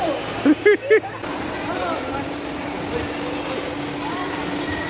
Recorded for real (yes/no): yes